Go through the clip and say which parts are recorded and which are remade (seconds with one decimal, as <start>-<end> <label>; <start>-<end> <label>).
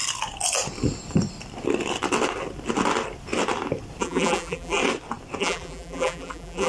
0.0-4.0 recorded; 4.0-4.8 remade; 4.8-5.4 recorded; 5.4-6.7 remade